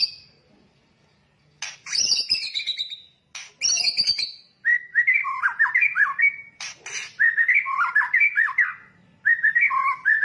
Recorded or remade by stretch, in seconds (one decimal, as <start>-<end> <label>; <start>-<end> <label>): 0.0-10.2 recorded